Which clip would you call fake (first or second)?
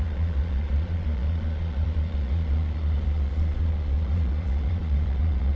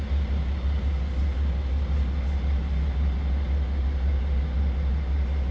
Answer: first